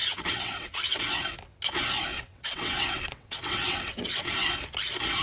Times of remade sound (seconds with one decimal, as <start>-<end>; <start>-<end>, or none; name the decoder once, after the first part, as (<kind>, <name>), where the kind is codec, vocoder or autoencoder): 0.0-1.0 (vocoder, WaveNeXt); 2.1-4.3